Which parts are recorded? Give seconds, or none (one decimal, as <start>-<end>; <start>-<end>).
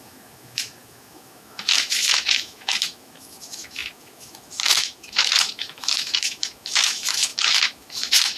none